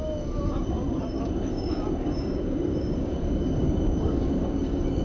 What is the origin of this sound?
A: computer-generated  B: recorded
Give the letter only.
A